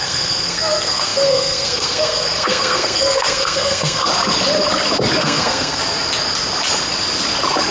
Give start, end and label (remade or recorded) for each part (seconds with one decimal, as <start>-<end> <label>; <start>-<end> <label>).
0.0-4.1 remade; 4.1-5.2 recorded; 5.2-5.8 remade; 5.8-7.7 recorded